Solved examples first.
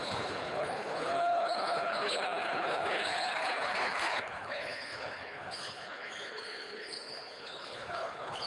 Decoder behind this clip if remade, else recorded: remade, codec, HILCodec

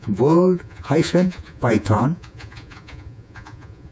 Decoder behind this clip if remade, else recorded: remade, vocoder, Vocos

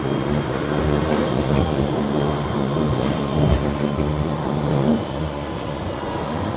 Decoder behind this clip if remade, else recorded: remade, vocoder, Vocos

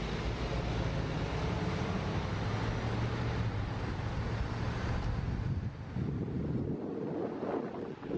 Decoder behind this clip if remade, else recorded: recorded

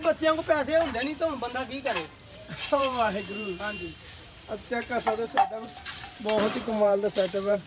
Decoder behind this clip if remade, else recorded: remade, vocoder, BigVGAN v2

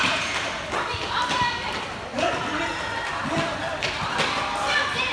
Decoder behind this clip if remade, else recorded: remade, vocoder, BigVGAN v2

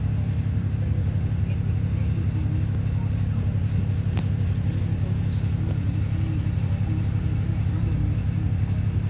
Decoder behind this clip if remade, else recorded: recorded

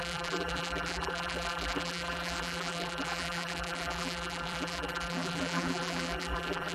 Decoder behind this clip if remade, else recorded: remade, vocoder, BigVGAN v2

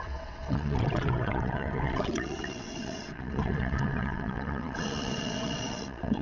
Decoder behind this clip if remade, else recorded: remade, vocoder, WaveNeXt